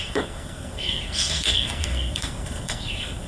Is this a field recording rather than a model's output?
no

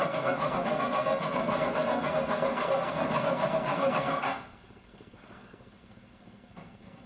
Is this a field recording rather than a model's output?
no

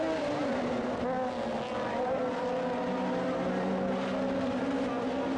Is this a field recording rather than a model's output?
yes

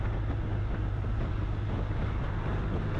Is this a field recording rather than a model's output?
yes